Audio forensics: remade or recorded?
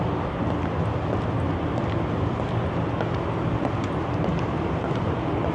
recorded